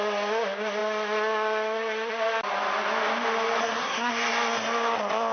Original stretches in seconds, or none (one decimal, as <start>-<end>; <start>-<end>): 0.0-3.6; 4.1-5.3